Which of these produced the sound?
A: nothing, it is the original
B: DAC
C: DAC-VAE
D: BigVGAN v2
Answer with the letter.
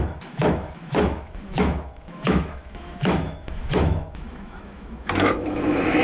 C